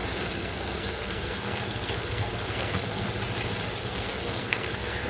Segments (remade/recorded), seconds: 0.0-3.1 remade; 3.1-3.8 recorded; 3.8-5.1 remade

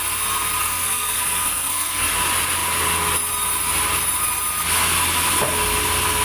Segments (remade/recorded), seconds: 0.0-0.6 recorded; 0.6-2.1 remade; 2.1-6.2 recorded

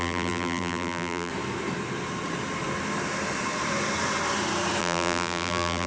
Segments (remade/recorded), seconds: 0.0-1.3 remade; 1.3-4.8 recorded; 4.8-5.9 remade